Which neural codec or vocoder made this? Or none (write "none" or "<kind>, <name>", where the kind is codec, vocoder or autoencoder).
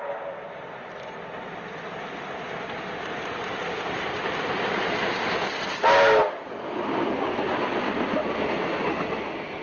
none